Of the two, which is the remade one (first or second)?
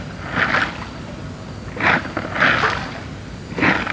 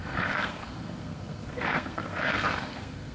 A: second